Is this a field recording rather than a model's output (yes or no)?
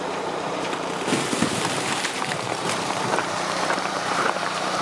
no